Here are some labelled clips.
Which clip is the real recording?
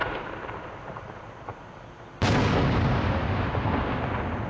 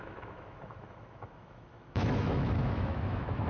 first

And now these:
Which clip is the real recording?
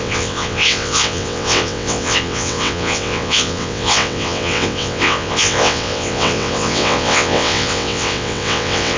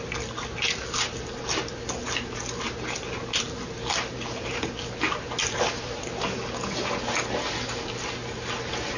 second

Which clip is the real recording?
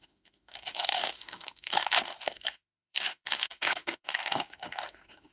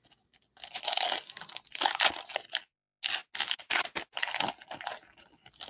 second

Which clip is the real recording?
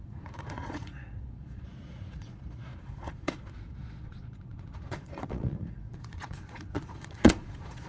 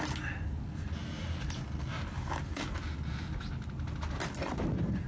second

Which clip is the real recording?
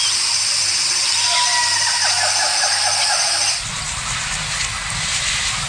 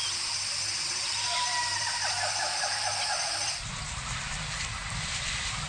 first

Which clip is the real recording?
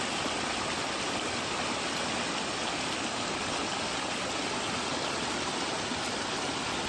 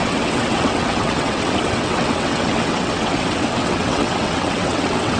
first